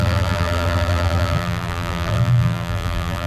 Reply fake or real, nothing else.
fake